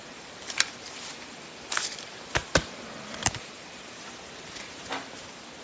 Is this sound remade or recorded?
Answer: recorded